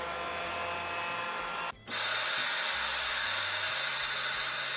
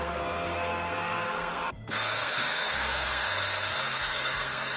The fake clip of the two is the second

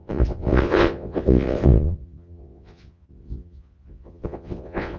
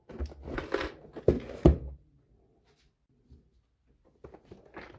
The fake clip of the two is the first